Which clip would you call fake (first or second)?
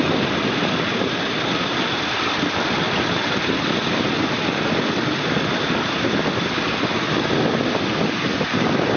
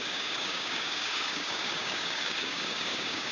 second